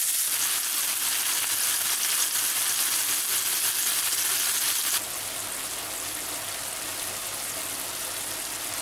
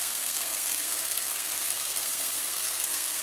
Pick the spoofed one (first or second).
second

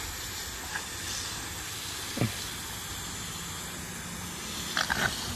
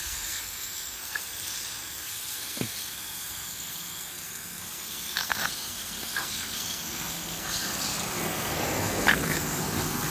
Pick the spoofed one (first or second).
second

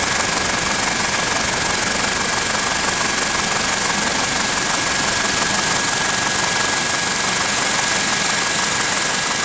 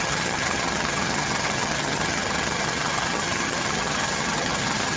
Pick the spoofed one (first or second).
second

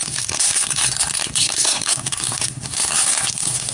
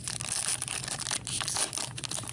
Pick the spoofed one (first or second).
first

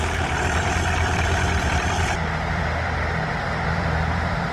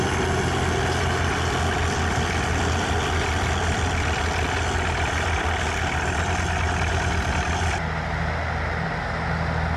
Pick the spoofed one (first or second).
first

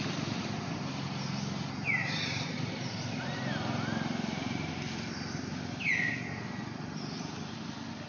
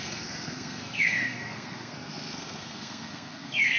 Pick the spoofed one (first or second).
second